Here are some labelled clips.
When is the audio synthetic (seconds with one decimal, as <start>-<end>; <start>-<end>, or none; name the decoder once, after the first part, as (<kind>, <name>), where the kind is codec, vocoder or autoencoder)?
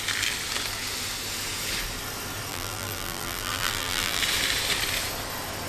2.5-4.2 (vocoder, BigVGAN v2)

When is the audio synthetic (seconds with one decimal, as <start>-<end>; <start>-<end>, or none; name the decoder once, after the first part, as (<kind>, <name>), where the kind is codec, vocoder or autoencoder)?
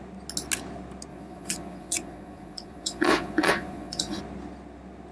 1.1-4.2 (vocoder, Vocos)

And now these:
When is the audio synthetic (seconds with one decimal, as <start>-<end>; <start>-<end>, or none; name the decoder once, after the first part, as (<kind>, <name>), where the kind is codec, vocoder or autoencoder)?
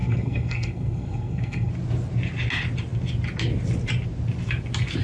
0.0-1.7 (codec, SNAC)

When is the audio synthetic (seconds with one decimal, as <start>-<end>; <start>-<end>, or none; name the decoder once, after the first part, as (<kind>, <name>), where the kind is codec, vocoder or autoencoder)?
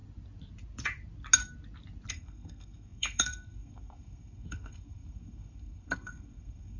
2.1-6.8 (codec, SNAC)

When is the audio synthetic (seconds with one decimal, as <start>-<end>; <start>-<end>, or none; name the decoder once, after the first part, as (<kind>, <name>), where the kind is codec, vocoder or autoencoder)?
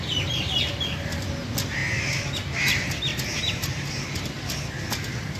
3.1-4.0 (vocoder, BigVGAN v2)